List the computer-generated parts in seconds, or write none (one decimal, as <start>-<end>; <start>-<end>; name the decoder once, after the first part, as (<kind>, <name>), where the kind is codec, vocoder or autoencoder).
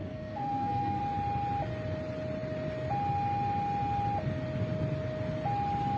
0.0-1.0 (codec, SNAC)